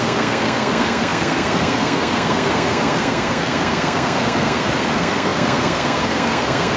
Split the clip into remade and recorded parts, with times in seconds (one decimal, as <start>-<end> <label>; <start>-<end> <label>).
0.0-6.8 remade